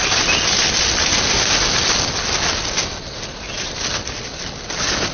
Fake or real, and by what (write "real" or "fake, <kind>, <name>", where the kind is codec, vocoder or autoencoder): real